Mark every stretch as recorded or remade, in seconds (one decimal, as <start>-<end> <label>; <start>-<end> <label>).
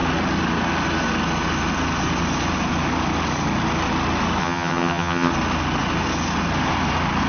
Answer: 0.0-4.4 recorded; 4.4-5.3 remade; 5.3-7.3 recorded